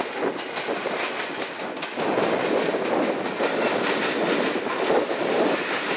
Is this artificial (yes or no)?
no